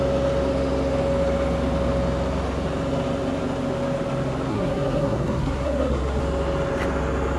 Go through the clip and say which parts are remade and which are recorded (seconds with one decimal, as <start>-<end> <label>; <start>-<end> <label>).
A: 0.0-4.5 recorded; 4.5-6.2 remade; 6.2-7.4 recorded